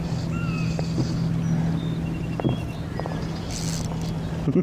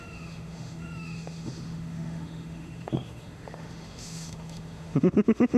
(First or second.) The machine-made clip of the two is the second